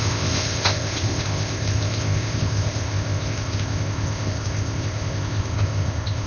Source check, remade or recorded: remade